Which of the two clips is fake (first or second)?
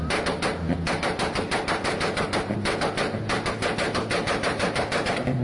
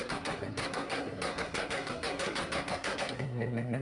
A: second